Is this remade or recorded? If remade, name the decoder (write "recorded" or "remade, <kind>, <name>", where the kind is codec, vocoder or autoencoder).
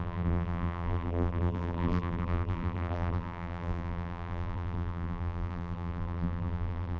remade, vocoder, BigVGAN v2